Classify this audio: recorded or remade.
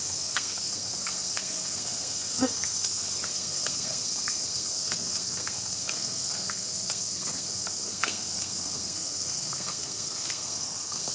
remade